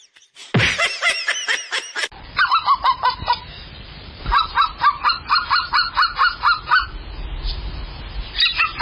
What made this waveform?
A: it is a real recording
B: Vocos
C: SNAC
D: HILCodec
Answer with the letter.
A